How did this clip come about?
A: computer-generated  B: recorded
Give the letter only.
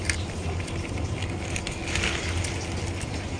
B